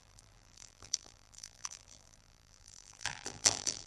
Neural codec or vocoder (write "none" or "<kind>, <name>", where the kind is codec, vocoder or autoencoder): vocoder, BigVGAN v2